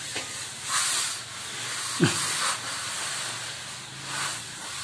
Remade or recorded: recorded